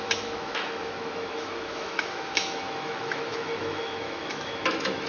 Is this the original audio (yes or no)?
no